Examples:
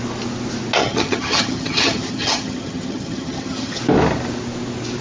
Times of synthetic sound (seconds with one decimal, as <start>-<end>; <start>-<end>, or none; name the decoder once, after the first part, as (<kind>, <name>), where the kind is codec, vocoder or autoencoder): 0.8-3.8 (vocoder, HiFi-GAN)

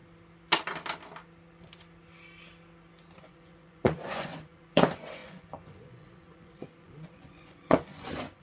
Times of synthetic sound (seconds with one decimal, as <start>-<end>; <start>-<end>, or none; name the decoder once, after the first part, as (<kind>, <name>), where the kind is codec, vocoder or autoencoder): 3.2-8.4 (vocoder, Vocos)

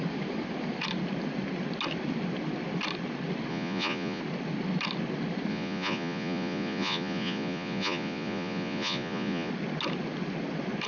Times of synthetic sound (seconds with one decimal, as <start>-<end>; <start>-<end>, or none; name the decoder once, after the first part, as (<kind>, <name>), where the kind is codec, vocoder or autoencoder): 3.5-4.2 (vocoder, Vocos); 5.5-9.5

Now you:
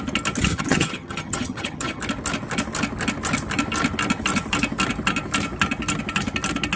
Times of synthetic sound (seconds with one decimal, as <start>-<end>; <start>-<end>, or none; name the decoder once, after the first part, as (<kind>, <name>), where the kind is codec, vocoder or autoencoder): 0.5-2.0 (vocoder, HiFi-GAN)

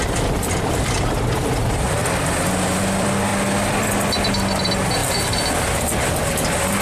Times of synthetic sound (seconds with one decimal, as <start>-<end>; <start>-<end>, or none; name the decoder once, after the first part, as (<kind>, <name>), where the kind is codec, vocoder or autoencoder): 0.0-2.0 (vocoder, BigVGAN v2); 2.8-3.3; 3.8-6.8

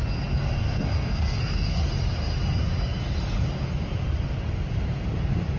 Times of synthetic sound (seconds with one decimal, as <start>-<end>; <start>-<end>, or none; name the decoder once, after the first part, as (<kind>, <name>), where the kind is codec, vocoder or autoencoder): 0.6-1.9 (codec, SNAC)